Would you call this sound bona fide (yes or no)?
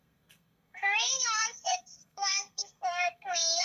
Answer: no